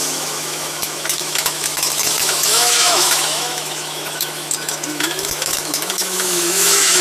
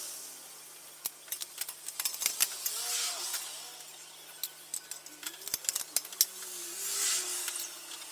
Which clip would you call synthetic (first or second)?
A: first